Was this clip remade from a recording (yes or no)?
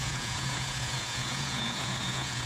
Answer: yes